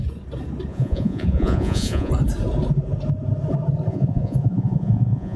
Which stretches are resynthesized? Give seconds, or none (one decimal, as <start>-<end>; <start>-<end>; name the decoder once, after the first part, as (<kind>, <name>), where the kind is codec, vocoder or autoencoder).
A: 0.7-2.1 (vocoder, Vocos); 3.9-5.4